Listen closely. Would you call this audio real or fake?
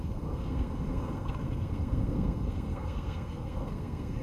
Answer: fake